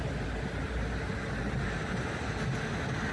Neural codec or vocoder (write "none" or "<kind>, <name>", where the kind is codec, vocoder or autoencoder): none